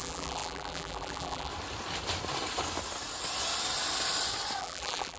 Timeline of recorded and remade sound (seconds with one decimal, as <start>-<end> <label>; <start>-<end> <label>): 0.0-1.5 remade; 1.5-4.6 recorded; 4.6-5.2 remade